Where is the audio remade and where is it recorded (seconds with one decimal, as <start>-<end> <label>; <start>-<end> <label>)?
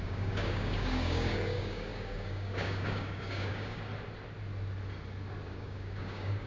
0.0-3.9 remade; 3.9-5.5 recorded; 5.5-6.5 remade